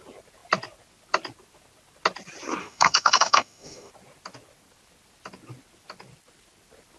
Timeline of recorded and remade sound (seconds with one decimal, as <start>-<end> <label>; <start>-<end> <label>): 0.0-2.6 recorded; 2.6-3.9 remade; 3.9-7.0 recorded